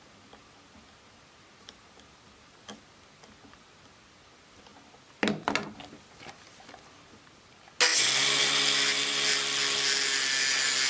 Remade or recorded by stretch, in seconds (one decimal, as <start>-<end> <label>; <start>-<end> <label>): 0.0-7.9 recorded; 7.9-8.4 remade; 8.4-10.9 recorded